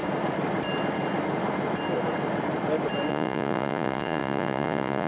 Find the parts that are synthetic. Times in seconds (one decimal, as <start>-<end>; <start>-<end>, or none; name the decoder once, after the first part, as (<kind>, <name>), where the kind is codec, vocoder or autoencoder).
3.1-5.1 (vocoder, Vocos)

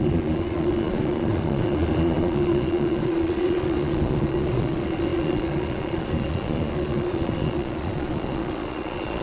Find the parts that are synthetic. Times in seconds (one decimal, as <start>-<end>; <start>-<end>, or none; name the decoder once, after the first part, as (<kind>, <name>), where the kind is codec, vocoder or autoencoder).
0.0-9.2 (vocoder, Vocos)

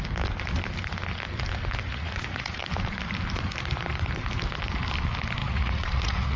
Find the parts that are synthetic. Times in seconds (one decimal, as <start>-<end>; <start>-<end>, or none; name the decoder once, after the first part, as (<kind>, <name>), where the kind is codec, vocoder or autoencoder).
1.9-2.6 (vocoder, Vocos); 5.4-6.4

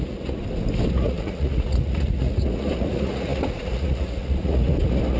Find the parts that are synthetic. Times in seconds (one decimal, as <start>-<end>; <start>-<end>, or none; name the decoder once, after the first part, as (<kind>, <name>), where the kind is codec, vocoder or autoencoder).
0.0-0.4 (vocoder, Vocos); 0.9-5.2

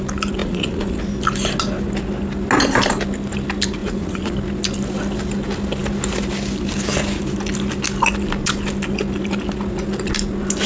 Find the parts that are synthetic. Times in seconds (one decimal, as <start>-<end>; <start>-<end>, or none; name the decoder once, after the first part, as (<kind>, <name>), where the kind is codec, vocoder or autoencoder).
0.4-1.0 (vocoder, Vocos); 3.8-4.3

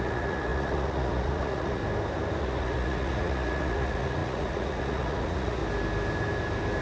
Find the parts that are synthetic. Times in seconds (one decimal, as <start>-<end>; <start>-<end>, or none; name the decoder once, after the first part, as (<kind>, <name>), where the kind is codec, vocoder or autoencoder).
0.0-1.8 (vocoder, Vocos); 2.4-5.6

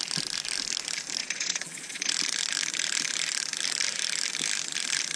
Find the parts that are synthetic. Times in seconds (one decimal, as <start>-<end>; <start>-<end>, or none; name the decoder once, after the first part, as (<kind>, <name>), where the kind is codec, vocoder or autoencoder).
1.2-2.1 (vocoder, Vocos)

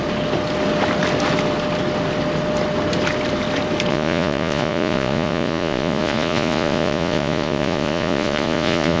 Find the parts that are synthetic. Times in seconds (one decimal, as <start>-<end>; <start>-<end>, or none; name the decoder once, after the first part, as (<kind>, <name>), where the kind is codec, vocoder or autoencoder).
3.9-9.0 (vocoder, Vocos)